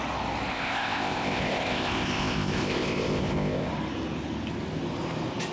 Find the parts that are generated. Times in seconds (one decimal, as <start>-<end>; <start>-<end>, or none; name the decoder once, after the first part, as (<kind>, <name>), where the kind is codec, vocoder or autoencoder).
0.5-3.7 (codec, ZipCodec)